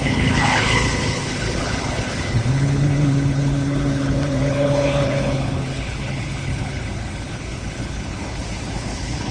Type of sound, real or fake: fake